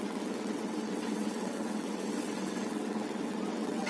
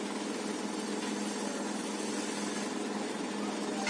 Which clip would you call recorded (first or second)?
second